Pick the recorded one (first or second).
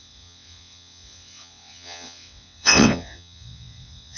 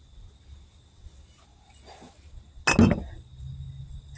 second